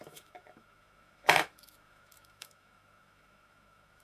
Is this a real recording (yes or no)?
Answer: no